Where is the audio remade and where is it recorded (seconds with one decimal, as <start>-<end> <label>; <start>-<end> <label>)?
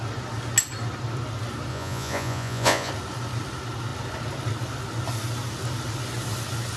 0.0-1.7 recorded; 1.7-2.9 remade; 2.9-6.8 recorded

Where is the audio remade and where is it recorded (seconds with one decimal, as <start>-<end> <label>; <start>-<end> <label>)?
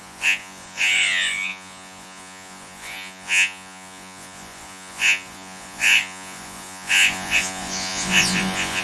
0.0-8.8 remade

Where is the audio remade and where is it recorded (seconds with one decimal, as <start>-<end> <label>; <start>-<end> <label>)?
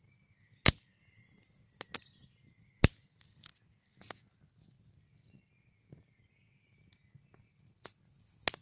0.0-8.6 recorded